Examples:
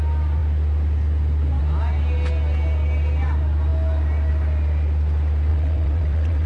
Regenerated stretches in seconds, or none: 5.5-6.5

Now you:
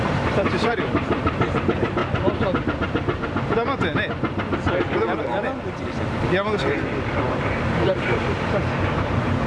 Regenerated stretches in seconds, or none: 0.0-2.0; 7.2-9.5

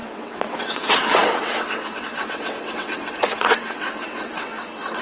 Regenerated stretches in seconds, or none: 0.0-5.0

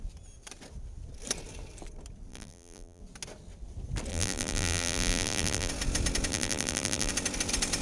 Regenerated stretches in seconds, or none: 2.3-3.0; 4.1-5.7; 6.3-7.1

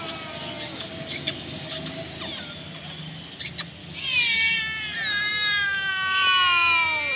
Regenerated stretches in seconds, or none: 0.7-1.9; 3.8-4.6

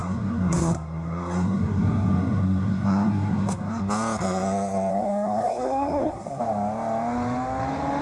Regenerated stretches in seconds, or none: 0.0-3.8; 4.9-6.4